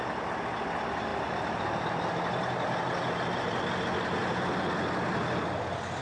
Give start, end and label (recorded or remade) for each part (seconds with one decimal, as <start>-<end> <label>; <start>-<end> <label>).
0.0-6.0 recorded